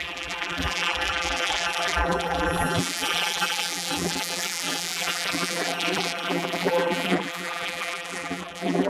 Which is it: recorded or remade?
remade